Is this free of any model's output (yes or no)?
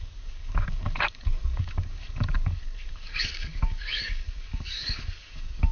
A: no